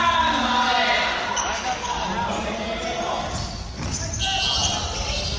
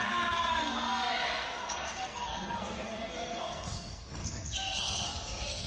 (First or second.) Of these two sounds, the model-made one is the second